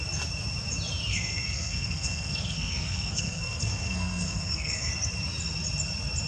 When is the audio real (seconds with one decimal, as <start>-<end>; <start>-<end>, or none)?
0.0-1.1; 4.9-6.3